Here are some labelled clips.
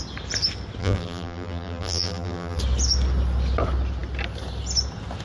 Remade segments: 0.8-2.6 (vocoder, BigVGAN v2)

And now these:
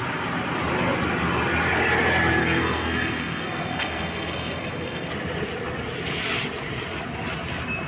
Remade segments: 2.4-5.1 (codec, SNAC)

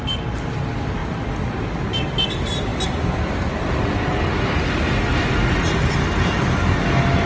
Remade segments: none

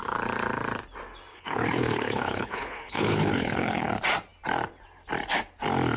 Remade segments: 1.3-3.9 (codec, HILCodec)

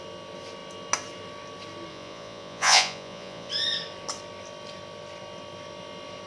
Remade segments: 1.9-3.5 (vocoder, Vocos)

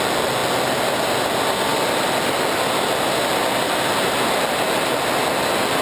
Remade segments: none

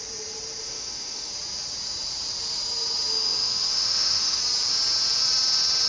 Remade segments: 0.6-1.3 (autoencoder, DAC-VAE); 3.1-4.4

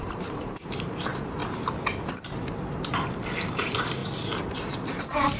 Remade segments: 0.0-1.4 (vocoder, BigVGAN v2); 3.5-4.0; 4.5-5.4